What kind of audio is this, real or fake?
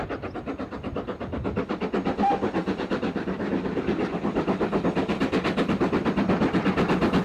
real